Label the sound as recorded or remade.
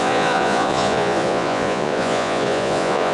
remade